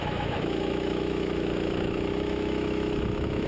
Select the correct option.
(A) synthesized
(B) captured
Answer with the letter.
A